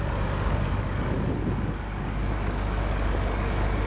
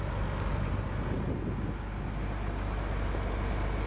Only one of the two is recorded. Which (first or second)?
second